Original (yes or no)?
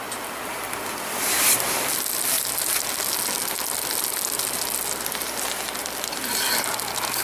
yes